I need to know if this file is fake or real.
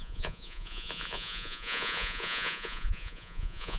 fake